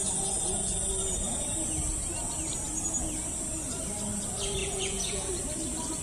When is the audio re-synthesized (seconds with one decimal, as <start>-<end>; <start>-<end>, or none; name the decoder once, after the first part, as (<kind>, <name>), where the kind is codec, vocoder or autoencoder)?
4.6-5.3 (vocoder, Vocos)